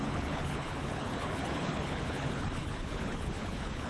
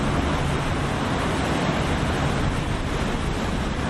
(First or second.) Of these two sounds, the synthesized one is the first